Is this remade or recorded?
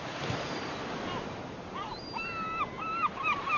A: remade